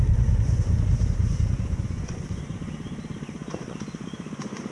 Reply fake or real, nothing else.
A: fake